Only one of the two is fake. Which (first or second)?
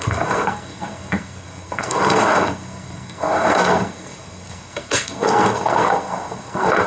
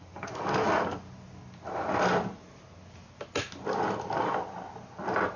first